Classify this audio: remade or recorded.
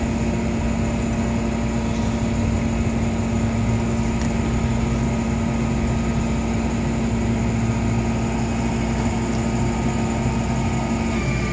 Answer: recorded